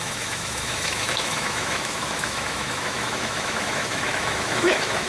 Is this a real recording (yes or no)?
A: no